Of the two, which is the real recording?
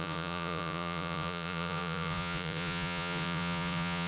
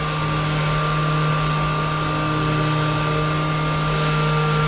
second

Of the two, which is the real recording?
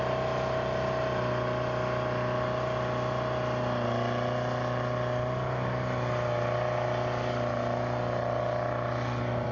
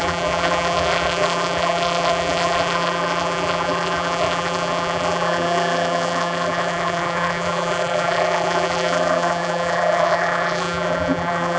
first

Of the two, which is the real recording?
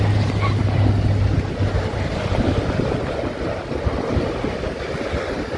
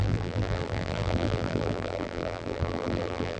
first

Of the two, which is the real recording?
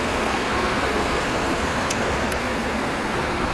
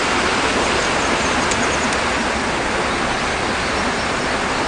second